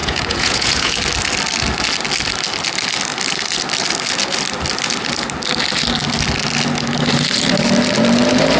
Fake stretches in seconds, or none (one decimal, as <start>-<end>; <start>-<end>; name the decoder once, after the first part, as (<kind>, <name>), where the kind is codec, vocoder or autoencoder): 0.0-0.9 (vocoder, Vocos)

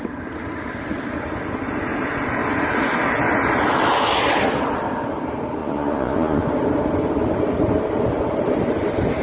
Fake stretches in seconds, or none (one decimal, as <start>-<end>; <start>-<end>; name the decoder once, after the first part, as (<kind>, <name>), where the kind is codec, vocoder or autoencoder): 5.6-6.5 (vocoder, Vocos)